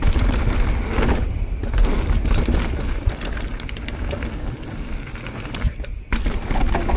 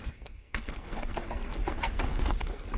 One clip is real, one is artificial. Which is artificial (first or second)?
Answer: second